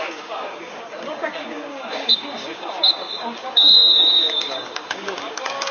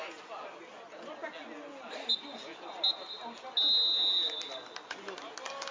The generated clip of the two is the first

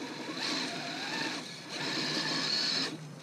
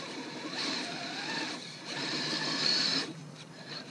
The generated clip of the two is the second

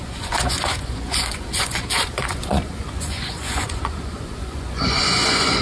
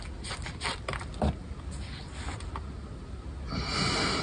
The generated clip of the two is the first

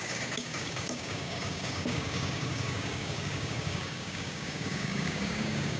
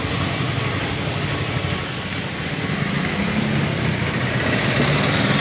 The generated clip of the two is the first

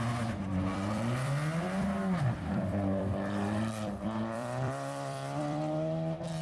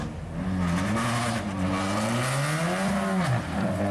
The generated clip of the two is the first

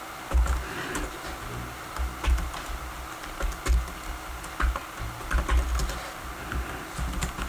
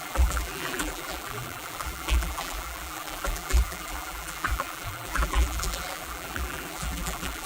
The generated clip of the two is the second